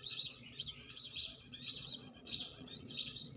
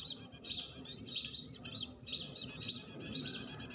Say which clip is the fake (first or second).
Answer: first